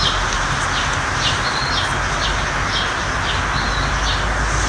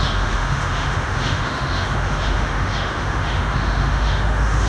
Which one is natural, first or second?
first